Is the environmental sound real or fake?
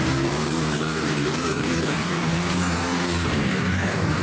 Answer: fake